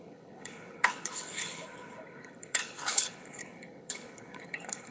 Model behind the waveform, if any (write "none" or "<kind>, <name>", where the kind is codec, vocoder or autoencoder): codec, HILCodec